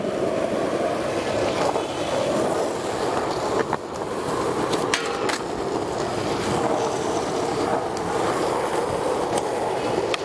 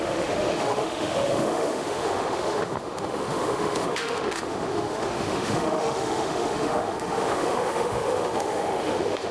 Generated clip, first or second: second